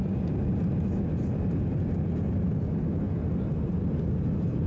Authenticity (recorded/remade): recorded